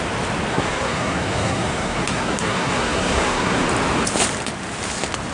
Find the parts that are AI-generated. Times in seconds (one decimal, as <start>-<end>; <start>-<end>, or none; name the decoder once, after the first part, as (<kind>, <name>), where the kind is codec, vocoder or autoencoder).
0.5-3.7 (codec, SNAC)